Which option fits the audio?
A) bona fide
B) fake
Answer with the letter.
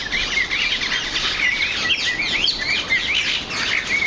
A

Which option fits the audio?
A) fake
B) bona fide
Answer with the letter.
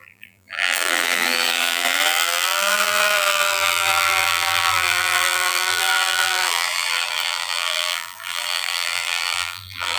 A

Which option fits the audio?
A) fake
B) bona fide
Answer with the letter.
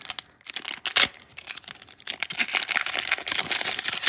B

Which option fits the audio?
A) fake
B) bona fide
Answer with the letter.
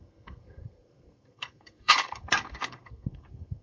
A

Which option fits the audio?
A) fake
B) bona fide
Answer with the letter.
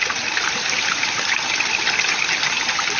B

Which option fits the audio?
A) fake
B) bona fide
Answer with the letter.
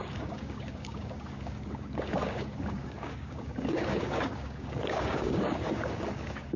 A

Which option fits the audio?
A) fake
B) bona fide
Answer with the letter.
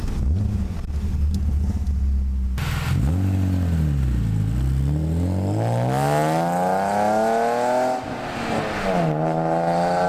B